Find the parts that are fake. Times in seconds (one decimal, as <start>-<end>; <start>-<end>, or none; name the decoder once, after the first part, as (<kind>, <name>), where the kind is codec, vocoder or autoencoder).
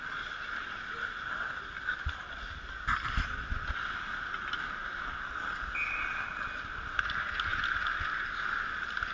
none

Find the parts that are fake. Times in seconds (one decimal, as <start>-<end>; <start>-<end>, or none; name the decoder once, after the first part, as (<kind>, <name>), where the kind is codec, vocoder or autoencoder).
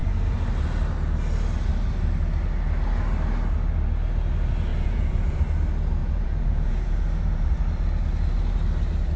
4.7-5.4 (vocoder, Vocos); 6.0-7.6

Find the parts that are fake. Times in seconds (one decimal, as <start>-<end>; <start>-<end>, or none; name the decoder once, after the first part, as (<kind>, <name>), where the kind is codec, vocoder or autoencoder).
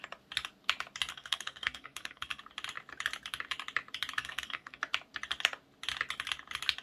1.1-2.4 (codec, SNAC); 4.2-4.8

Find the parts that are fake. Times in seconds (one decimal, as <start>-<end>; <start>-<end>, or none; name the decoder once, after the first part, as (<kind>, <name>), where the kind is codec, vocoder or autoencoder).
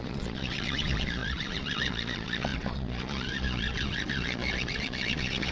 0.0-5.5 (vocoder, Vocos)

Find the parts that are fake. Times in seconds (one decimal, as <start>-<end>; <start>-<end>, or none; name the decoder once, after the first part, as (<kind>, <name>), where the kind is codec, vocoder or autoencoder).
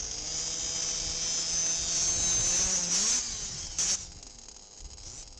none